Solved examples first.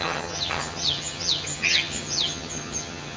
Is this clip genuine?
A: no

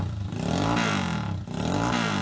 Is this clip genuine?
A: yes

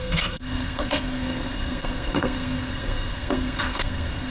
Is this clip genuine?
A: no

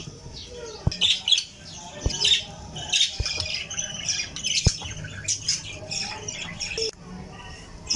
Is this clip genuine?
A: yes